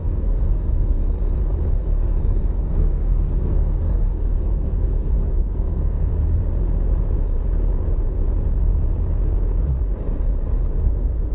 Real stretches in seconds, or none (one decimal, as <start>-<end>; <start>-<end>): 1.0-1.7; 6.1-10.8